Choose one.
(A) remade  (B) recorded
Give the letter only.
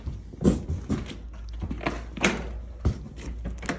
B